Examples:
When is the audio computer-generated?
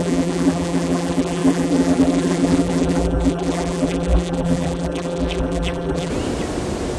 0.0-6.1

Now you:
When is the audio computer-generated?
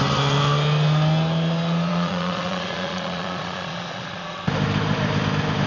1.9-4.4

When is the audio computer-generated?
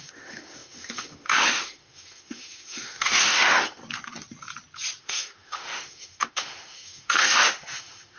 0.0-3.8; 5.0-8.2